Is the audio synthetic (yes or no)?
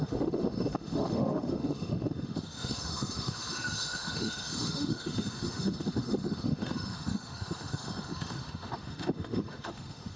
yes